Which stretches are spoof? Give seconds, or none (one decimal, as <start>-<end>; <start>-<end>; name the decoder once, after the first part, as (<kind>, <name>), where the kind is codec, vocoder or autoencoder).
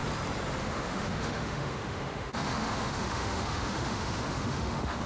0.6-5.1 (autoencoder, DAC-VAE)